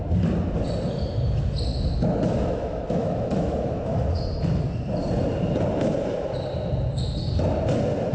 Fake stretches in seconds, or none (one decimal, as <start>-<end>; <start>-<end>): 1.7-4.0